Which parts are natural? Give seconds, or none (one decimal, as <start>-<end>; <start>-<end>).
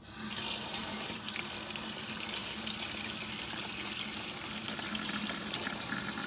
0.0-0.8; 1.5-6.3